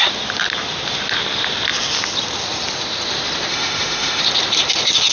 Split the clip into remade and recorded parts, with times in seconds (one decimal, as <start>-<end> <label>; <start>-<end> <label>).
0.0-3.5 recorded; 3.5-4.2 remade; 4.2-5.1 recorded